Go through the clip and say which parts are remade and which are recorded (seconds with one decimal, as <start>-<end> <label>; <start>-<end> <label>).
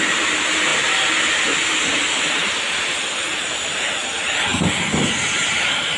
0.0-6.0 recorded